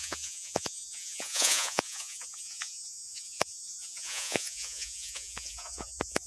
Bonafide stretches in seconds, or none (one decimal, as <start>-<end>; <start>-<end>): none